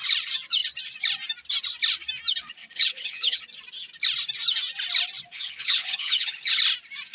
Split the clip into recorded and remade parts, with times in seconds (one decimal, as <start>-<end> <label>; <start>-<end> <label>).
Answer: 0.0-2.6 recorded; 2.6-3.4 remade; 3.4-5.3 recorded; 5.3-6.6 remade; 6.6-7.1 recorded